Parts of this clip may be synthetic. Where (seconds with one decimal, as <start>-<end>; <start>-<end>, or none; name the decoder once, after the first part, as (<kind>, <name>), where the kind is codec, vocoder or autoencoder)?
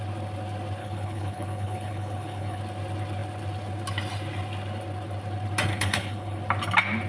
0.8-2.6 (codec, HILCodec); 5.7-6.4